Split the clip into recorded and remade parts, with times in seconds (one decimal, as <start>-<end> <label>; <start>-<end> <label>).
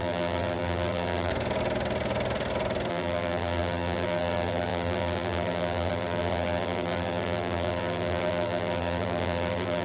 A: 0.0-1.3 remade; 1.3-2.9 recorded; 2.9-9.8 remade